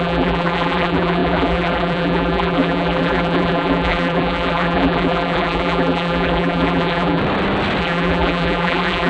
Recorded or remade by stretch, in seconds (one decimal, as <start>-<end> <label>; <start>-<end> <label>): 0.0-7.2 remade; 7.2-7.8 recorded; 7.8-9.1 remade